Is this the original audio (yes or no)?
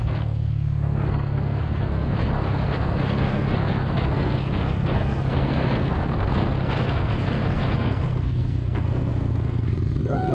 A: no